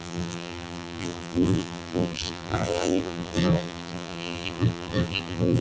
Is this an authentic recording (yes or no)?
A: no